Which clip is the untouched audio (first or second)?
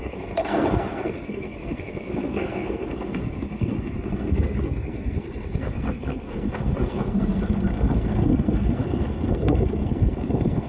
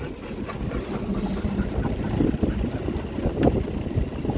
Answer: second